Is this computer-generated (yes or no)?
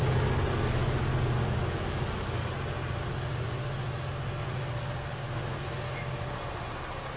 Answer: no